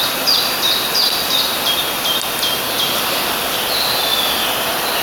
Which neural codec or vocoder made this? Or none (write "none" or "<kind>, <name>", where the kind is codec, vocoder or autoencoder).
none